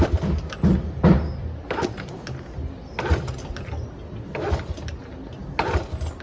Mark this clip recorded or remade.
recorded